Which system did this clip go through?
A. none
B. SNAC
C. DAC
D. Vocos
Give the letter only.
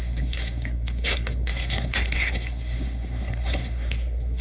B